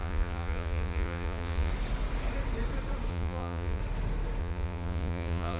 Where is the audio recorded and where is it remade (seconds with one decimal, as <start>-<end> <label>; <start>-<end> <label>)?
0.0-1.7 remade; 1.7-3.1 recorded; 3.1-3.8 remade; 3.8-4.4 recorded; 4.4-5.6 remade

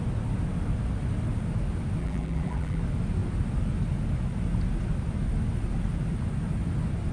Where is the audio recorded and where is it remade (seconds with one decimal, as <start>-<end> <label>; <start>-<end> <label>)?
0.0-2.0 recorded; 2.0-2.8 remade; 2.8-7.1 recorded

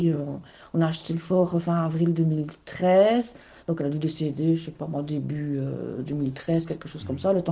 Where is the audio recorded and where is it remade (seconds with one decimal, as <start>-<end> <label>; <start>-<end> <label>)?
0.0-0.6 remade; 0.6-1.0 recorded; 1.0-1.6 remade; 1.6-7.5 recorded

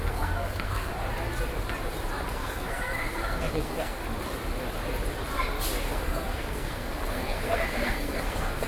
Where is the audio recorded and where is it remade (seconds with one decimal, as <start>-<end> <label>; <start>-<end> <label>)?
0.0-0.9 remade; 0.9-2.3 recorded; 2.3-4.0 remade; 4.0-5.8 recorded; 5.8-8.7 remade